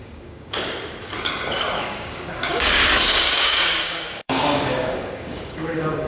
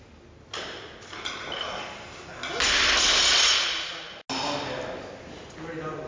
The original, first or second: second